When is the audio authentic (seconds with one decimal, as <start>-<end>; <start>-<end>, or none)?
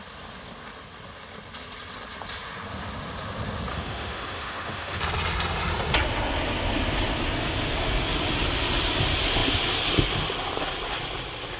0.0-3.7; 5.0-11.6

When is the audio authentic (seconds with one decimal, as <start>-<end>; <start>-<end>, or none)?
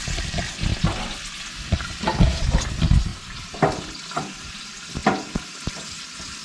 0.7-2.5; 3.1-3.9; 5.0-5.7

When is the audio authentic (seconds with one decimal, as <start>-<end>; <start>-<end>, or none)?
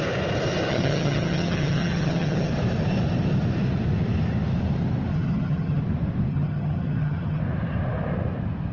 0.0-0.7; 2.5-5.1; 5.8-6.3; 7.4-8.7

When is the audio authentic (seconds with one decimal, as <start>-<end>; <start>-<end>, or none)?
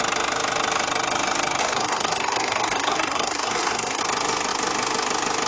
0.0-1.6; 4.0-5.5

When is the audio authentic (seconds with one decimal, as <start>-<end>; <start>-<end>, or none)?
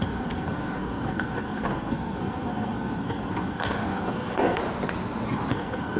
4.6-5.5